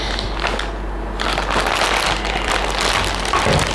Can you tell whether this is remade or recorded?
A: recorded